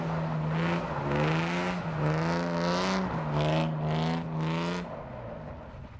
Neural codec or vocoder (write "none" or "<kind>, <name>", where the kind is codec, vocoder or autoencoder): none